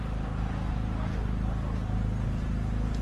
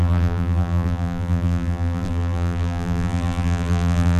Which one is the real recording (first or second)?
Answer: first